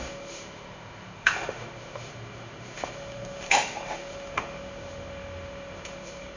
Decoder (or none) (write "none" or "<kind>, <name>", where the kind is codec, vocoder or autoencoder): autoencoder, DAC-VAE